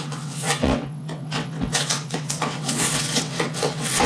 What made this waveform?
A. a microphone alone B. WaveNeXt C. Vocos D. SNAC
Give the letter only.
B